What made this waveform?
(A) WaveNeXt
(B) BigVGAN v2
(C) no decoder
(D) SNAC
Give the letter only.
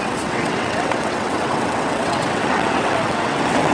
A